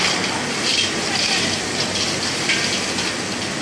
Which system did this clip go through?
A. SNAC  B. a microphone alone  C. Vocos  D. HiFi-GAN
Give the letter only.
B